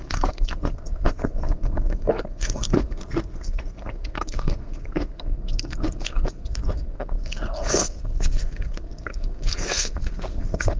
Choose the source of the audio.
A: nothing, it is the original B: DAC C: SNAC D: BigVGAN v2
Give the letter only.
C